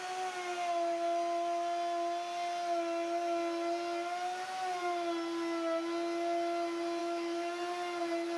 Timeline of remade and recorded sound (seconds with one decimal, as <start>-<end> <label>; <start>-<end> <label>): 0.0-7.0 recorded; 7.0-7.6 remade; 7.6-8.4 recorded